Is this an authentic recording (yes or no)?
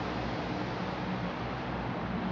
yes